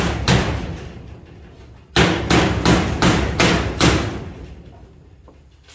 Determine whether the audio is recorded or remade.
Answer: recorded